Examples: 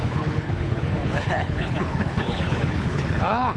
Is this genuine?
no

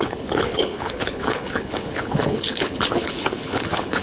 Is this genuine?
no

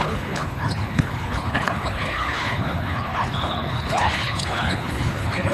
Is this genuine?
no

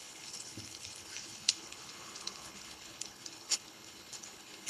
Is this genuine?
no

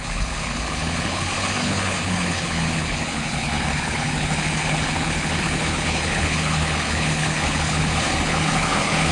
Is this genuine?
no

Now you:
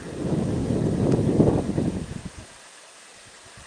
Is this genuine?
yes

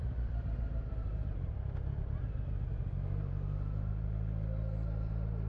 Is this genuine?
yes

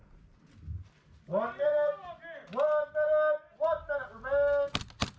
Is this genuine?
yes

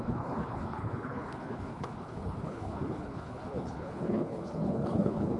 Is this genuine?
no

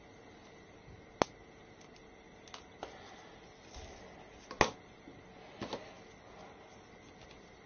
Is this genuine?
yes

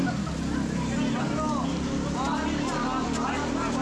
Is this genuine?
yes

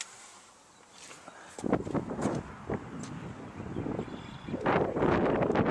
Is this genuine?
yes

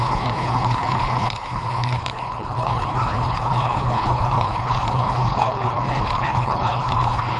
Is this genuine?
no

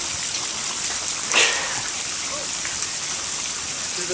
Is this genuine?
yes